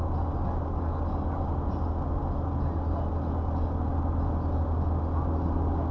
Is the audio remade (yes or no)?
no